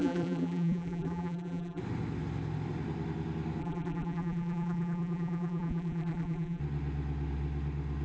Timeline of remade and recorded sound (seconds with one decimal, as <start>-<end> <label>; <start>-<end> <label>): 0.0-1.8 remade; 1.8-3.6 recorded; 3.6-6.6 remade; 6.6-8.0 recorded